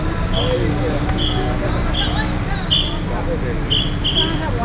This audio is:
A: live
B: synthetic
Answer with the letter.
A